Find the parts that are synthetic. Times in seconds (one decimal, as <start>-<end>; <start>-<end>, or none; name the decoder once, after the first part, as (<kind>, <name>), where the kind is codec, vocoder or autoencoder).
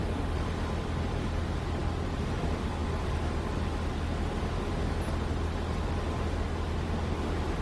none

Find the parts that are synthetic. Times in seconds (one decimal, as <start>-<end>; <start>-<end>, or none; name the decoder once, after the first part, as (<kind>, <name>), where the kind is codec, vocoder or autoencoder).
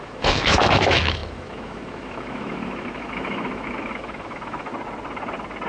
0.0-4.7 (autoencoder, DAC-VAE)